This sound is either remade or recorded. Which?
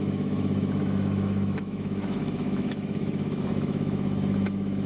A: remade